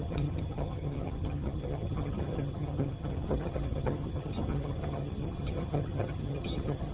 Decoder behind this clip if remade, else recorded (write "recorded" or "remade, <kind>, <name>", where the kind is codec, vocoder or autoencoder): remade, vocoder, HiFi-GAN